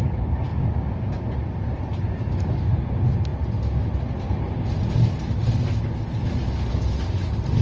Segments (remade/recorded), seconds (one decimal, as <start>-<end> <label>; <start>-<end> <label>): 0.0-7.6 recorded